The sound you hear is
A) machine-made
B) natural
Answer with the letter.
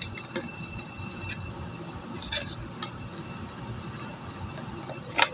B